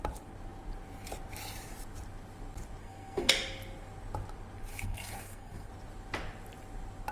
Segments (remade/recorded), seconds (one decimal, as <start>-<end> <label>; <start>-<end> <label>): 0.0-2.8 recorded; 2.8-3.3 remade; 3.3-4.7 recorded; 4.7-5.7 remade; 5.7-7.1 recorded